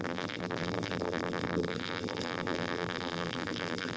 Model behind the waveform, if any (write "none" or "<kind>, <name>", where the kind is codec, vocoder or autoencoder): vocoder, BigVGAN v2